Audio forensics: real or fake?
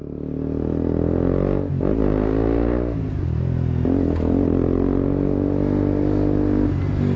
real